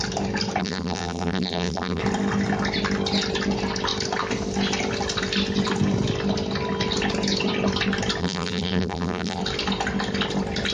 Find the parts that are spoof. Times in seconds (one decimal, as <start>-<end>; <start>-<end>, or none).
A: 0.6-2.0; 8.2-9.4

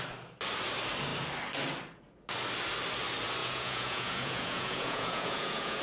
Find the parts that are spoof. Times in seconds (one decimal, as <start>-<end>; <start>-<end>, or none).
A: 3.4-5.8

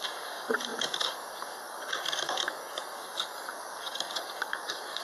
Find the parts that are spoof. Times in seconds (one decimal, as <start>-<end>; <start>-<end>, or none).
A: 0.0-5.0